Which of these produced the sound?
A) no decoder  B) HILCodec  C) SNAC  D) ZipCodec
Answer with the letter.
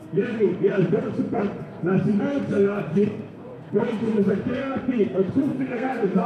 C